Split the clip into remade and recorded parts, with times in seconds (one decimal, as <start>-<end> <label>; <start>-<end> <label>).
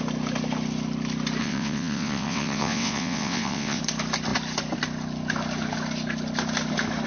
0.0-1.4 recorded; 1.4-3.8 remade; 3.8-7.1 recorded